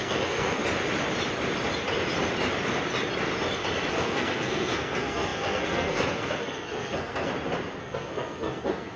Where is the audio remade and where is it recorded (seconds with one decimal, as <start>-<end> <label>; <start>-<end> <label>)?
0.0-0.6 remade; 0.6-3.9 recorded; 3.9-7.3 remade; 7.3-7.8 recorded; 7.8-9.0 remade